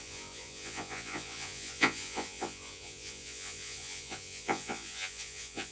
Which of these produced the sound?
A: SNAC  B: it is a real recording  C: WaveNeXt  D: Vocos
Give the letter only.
D